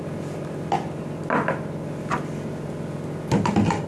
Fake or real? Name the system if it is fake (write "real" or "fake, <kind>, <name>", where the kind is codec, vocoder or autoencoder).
real